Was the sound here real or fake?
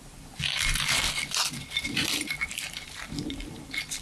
fake